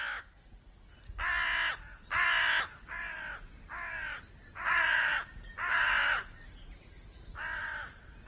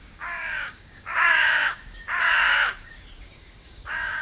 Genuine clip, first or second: first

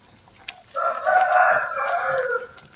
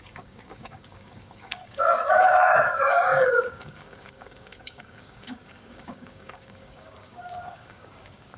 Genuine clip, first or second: first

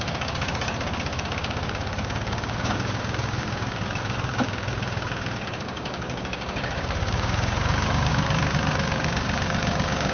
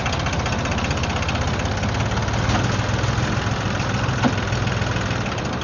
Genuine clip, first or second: second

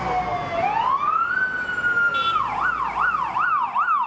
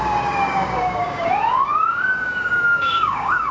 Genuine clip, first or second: first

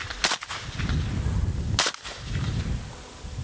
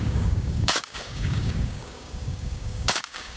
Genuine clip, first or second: first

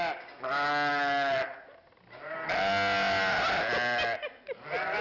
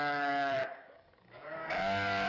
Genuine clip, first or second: first